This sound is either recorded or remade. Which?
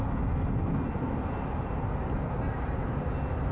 recorded